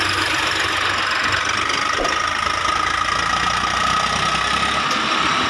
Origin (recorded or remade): recorded